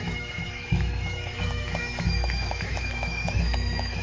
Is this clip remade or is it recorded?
remade